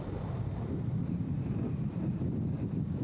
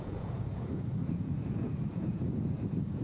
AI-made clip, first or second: second